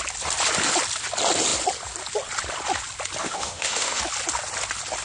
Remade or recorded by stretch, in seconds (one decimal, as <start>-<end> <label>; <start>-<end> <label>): 0.0-3.2 recorded; 3.2-4.0 remade; 4.0-5.0 recorded